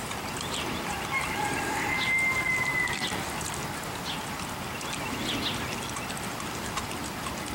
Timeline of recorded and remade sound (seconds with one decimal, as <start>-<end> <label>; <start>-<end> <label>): 0.0-2.7 remade; 2.7-6.1 recorded; 6.1-7.5 remade